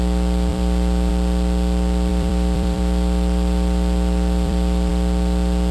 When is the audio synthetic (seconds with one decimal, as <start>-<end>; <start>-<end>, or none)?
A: 0.5-1.1; 2.1-4.9